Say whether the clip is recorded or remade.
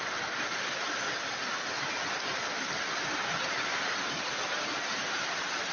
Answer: recorded